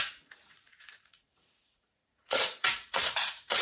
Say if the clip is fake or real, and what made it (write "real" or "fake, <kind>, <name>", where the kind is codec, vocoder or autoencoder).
fake, vocoder, Vocos